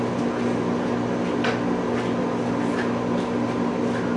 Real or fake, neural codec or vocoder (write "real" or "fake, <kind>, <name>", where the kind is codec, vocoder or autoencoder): real